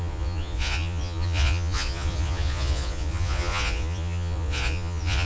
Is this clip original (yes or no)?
no